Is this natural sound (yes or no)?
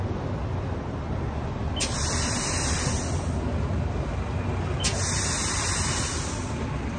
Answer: yes